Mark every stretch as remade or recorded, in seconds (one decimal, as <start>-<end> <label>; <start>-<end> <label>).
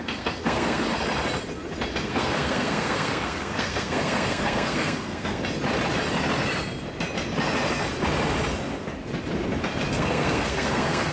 0.0-0.9 remade; 0.9-1.9 recorded; 1.9-5.4 remade; 5.4-9.9 recorded; 9.9-11.1 remade